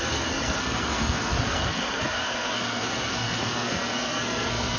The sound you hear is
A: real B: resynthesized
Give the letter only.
B